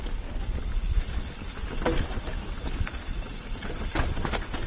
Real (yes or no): yes